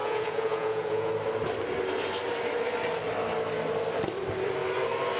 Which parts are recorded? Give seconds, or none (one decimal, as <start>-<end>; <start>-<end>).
1.1-5.2